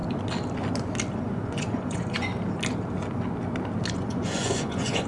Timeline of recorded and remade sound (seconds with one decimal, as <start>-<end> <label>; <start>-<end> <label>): 0.0-1.2 recorded; 1.2-2.3 remade; 2.3-3.9 recorded; 3.9-5.1 remade